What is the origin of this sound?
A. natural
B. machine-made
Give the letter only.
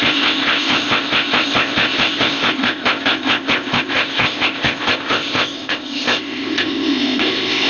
B